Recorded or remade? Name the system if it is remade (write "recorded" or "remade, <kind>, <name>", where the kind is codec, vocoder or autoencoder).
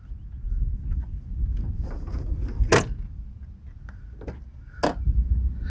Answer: recorded